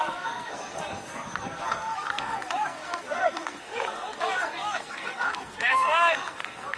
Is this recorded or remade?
remade